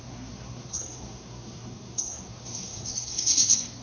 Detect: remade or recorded remade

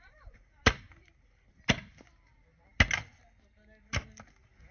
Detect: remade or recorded recorded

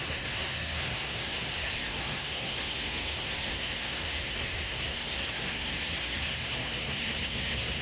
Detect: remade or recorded remade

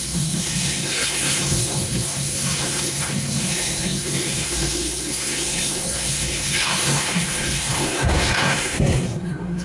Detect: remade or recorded remade